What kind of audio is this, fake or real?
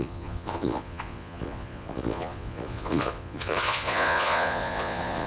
fake